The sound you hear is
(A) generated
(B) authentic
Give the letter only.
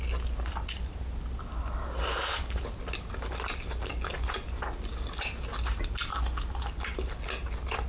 B